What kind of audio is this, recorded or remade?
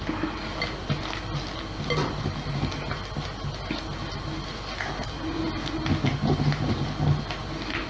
recorded